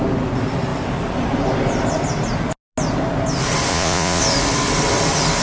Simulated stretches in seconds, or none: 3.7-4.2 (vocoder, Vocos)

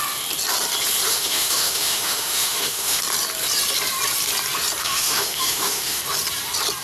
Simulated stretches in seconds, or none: 1.1-3.0 (autoencoder, DAC-VAE); 4.8-6.0

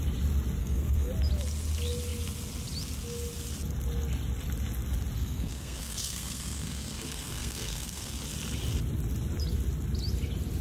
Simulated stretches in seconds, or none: 0.6-1.1 (codec, SNAC); 5.2-8.2

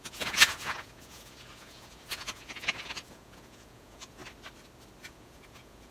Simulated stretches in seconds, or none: 0.0-4.2 (vocoder, Vocos); 5.0-5.9

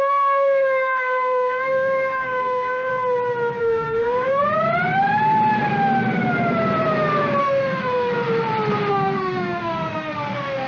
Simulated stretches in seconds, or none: 0.0-2.9 (autoencoder, DAC-VAE); 3.6-4.4; 7.4-8.1; 8.9-10.7

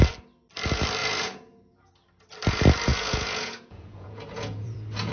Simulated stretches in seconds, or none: 1.0-1.9 (vocoder, Vocos); 2.9-5.1

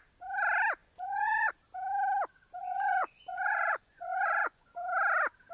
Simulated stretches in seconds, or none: 0.8-1.5 (vocoder, Vocos); 2.6-4.7